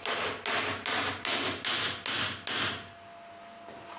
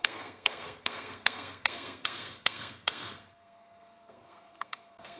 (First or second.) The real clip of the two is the first